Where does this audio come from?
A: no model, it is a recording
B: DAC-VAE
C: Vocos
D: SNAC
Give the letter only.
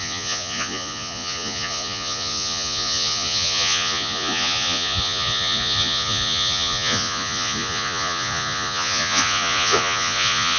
C